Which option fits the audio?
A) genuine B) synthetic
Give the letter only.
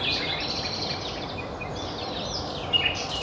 A